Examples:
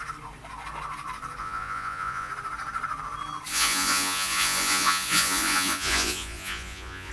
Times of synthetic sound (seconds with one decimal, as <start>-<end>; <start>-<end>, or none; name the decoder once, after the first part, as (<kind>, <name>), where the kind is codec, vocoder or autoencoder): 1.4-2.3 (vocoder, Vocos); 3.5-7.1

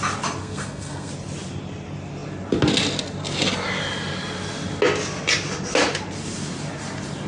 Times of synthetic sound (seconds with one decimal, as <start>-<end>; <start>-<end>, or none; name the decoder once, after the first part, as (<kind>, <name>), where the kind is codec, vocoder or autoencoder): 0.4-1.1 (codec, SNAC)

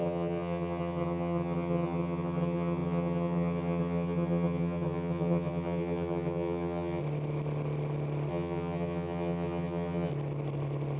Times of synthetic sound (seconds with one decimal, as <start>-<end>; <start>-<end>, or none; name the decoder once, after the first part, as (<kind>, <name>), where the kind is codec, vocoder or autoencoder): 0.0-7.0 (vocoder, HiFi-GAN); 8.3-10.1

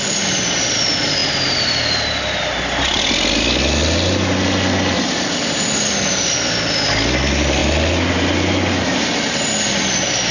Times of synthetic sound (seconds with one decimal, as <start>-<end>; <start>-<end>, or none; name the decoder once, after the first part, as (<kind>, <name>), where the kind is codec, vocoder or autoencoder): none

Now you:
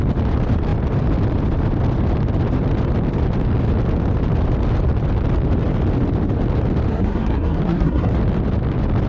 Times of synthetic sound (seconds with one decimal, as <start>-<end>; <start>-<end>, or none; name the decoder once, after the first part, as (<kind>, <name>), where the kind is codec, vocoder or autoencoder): 6.9-8.1 (codec, SNAC)

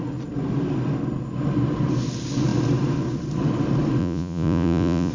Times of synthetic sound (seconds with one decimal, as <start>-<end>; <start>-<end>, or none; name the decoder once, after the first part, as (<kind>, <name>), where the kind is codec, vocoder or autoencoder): 4.0-5.1 (vocoder, Vocos)

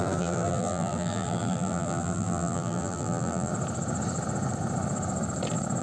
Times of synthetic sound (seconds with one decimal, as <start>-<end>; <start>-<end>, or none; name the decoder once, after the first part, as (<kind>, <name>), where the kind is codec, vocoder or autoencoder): 0.0-3.5 (vocoder, BigVGAN v2)